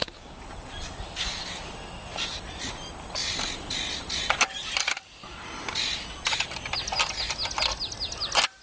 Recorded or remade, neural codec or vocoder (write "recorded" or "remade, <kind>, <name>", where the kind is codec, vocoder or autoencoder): recorded